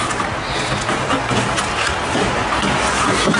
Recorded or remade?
recorded